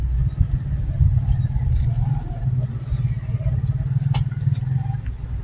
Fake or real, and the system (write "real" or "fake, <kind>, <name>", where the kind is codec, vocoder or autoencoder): real